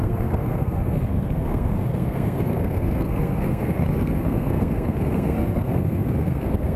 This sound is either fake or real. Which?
fake